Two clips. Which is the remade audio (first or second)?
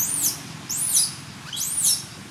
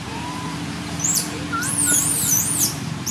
second